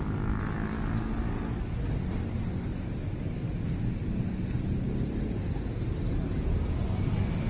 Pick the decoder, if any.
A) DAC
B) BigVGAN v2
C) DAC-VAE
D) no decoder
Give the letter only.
D